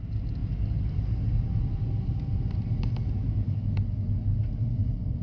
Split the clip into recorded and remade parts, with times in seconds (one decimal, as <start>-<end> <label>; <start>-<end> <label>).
0.0-3.2 recorded; 3.2-3.8 remade; 3.8-5.2 recorded